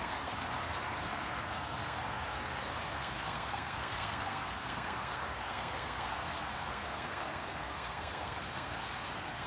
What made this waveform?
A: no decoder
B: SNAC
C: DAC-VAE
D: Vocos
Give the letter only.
B